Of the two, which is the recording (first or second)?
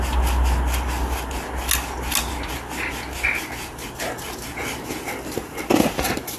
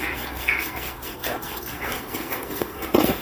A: first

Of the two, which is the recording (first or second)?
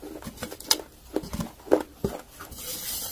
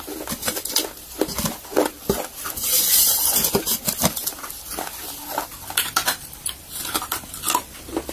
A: first